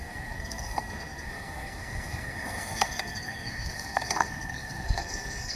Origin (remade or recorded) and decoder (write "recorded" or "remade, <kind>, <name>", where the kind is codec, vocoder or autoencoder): remade, codec, SNAC